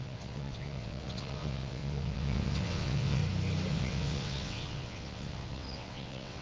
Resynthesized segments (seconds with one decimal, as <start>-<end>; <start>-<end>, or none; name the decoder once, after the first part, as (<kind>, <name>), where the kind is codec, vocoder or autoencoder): 0.0-3.2 (vocoder, WaveNeXt); 3.7-6.4